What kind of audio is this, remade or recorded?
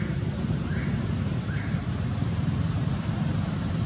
remade